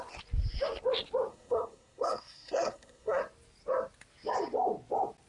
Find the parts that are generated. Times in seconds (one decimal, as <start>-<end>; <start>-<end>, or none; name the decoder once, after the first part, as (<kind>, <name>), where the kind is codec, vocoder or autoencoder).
1.3-3.2 (codec, SNAC)